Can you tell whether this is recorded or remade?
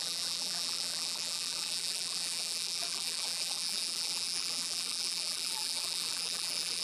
remade